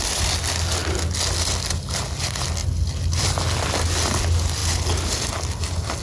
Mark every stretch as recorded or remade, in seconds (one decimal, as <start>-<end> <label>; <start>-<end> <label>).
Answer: 0.0-6.0 recorded